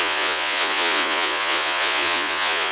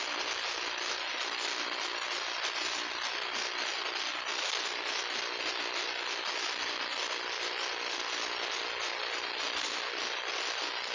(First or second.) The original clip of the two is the second